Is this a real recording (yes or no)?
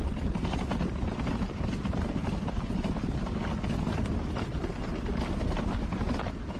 yes